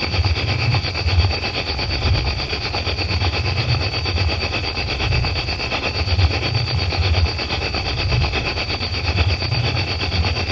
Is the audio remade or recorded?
recorded